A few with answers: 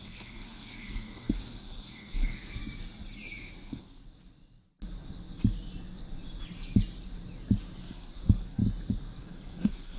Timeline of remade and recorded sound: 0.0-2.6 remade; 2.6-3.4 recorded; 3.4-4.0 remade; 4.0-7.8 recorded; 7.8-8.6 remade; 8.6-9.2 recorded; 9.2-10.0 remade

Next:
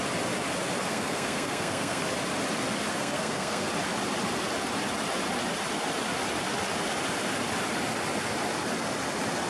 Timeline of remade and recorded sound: 0.0-0.8 recorded; 0.8-2.0 remade; 2.0-2.9 recorded; 2.9-3.7 remade; 3.7-9.5 recorded

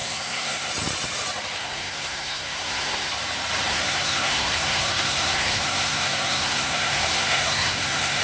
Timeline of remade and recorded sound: 0.0-0.7 remade; 0.7-1.6 recorded; 1.6-3.1 remade; 3.1-3.7 recorded; 3.7-8.2 remade

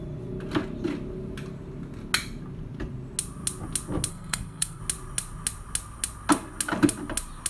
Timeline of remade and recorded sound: 0.0-4.1 recorded; 4.1-4.8 remade; 4.8-7.5 recorded

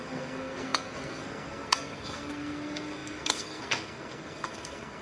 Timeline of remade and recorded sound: 0.0-5.0 remade

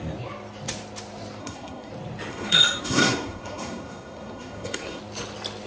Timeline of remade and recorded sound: 0.0-1.4 recorded; 1.4-1.9 remade; 1.9-2.3 recorded; 2.3-5.0 remade; 5.0-5.7 recorded

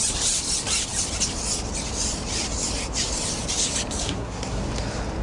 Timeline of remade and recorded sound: 0.0-4.0 recorded; 4.0-4.6 remade; 4.6-5.2 recorded

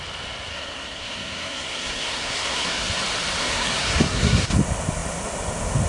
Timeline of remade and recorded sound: 0.0-0.5 recorded; 0.5-2.9 remade; 2.9-3.4 recorded; 3.4-4.5 remade; 4.5-5.9 recorded